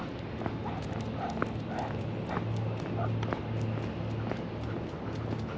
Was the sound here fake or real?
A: real